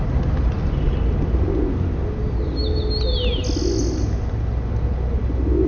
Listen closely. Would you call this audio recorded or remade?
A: recorded